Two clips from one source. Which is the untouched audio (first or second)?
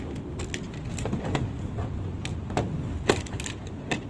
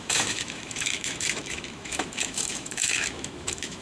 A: first